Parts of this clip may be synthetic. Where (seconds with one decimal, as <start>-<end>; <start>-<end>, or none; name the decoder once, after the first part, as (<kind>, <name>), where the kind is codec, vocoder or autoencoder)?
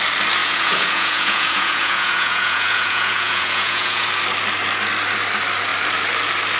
0.4-4.1 (vocoder, Vocos)